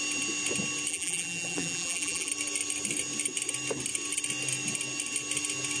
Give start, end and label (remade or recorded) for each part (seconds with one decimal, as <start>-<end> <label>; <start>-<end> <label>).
0.0-0.9 recorded; 0.9-2.3 remade; 2.3-5.8 recorded